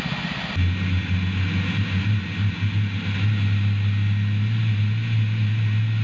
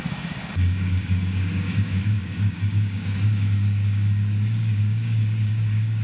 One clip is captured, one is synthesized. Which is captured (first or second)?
first